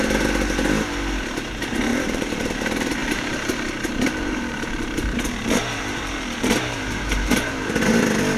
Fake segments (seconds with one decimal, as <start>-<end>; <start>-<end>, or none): 1.9-2.5; 3.0-7.9